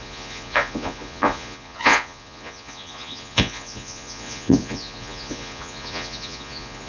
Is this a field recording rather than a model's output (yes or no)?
no